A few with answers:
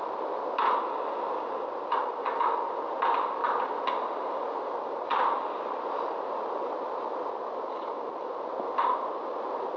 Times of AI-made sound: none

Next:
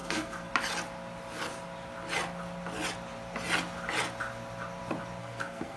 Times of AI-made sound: 0.0-0.5 (codec, SNAC); 5.2-5.8

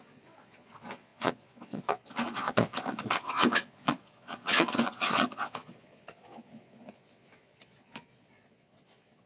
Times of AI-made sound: 0.0-9.3 (vocoder, Vocos)

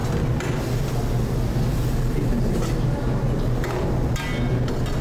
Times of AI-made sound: none

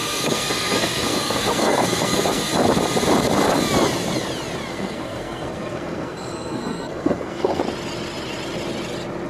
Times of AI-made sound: 0.0-2.5 (codec, SNAC); 4.7-7.6

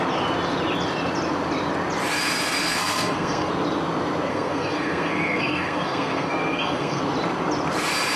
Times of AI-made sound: 2.6-3.5 (codec, SNAC); 4.3-7.0

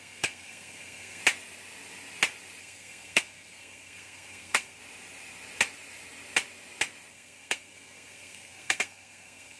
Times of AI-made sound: 0.0-1.2 (codec, SNAC); 2.6-4.8; 7.1-9.6